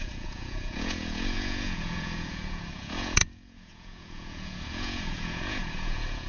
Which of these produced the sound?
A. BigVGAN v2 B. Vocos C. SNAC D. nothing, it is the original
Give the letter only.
B